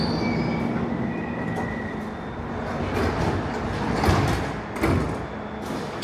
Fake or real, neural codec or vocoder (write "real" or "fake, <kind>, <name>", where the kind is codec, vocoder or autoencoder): real